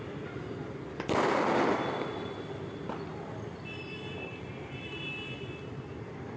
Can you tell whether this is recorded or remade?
recorded